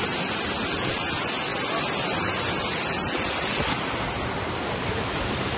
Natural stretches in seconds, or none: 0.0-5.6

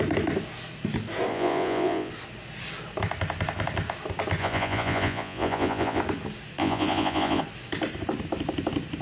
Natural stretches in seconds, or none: 0.0-1.3; 2.1-4.4; 6.0-6.6; 7.4-9.0

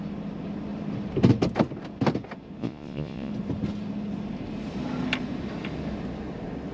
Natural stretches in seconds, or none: 0.0-2.6; 3.3-6.7

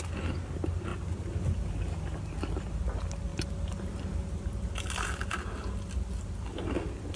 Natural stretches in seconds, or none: 0.0-7.2

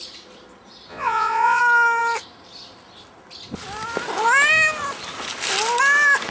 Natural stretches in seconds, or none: 0.0-0.9; 1.6-6.3